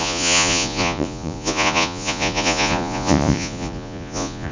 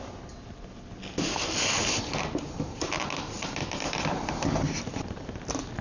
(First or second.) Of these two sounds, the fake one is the first